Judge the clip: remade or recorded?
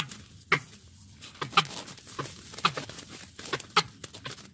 recorded